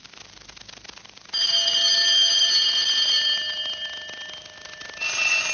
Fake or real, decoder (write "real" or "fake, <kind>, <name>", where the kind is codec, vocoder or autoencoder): real